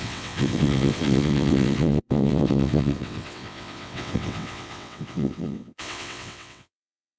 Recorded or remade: remade